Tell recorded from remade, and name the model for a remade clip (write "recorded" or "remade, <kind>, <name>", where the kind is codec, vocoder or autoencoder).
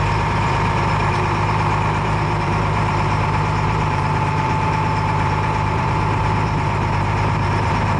remade, vocoder, BigVGAN v2